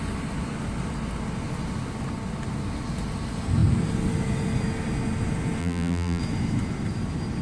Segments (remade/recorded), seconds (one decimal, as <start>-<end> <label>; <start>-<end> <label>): 0.0-5.6 recorded; 5.6-6.2 remade; 6.2-7.4 recorded